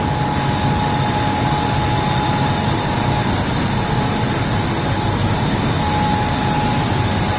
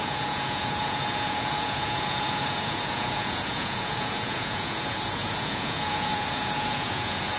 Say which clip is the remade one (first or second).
second